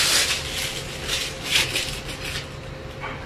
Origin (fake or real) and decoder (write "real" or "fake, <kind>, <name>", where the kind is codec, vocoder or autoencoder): real